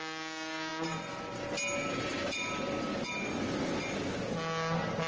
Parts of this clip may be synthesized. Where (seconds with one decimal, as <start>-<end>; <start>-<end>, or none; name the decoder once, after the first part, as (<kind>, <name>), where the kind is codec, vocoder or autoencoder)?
none